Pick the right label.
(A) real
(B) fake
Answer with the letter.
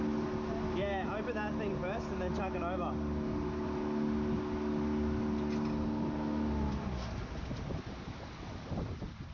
A